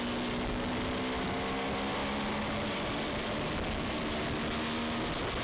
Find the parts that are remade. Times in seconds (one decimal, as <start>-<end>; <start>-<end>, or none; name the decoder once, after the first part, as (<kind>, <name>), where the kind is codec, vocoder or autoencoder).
2.0-4.4 (vocoder, BigVGAN v2)